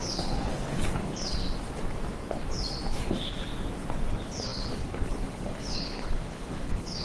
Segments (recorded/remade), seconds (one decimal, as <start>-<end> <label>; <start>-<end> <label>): 0.0-1.4 remade; 1.4-2.9 recorded; 2.9-3.5 remade; 3.5-4.1 recorded; 4.1-7.0 remade